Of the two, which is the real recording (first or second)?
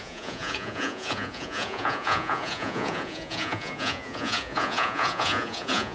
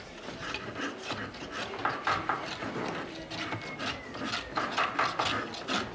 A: second